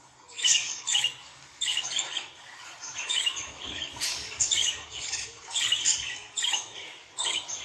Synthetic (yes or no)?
yes